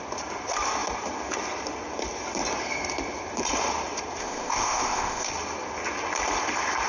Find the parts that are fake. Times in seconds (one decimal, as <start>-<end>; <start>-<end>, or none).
4.2-5.3